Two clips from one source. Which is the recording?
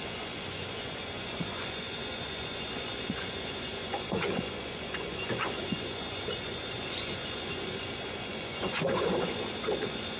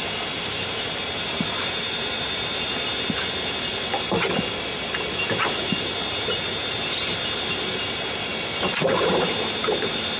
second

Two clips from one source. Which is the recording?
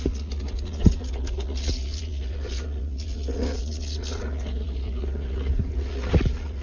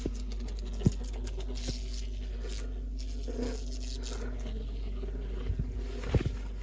second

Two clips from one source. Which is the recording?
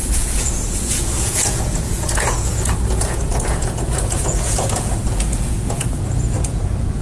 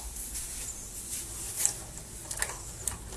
second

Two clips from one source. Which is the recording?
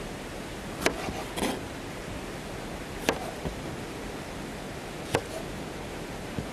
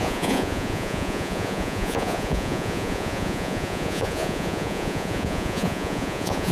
first